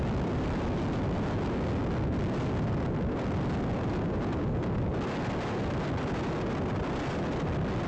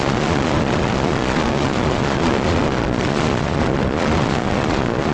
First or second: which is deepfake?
second